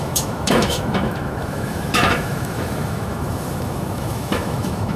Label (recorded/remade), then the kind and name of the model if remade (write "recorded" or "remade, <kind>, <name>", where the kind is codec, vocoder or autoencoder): remade, autoencoder, DAC-VAE